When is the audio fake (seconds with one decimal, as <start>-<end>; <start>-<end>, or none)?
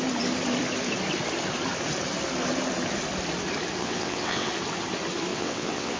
3.8-4.5; 5.3-6.0